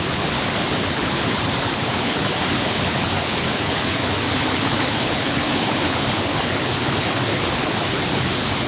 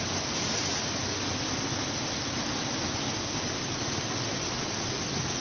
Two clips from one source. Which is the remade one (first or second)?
first